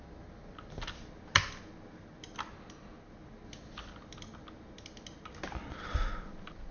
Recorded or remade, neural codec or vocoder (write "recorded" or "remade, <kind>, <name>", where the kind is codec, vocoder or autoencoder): recorded